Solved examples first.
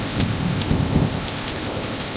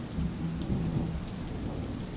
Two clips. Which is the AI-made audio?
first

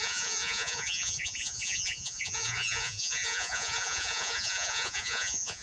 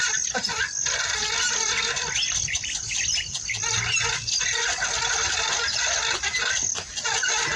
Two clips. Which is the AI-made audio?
first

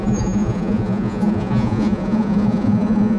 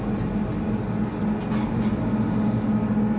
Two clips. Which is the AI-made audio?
first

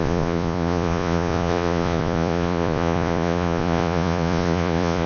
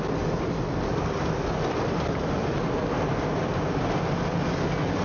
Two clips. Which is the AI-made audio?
first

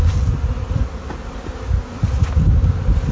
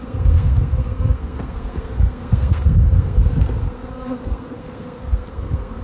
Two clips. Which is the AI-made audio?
second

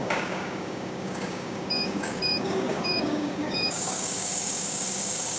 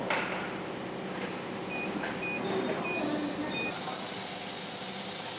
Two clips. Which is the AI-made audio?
first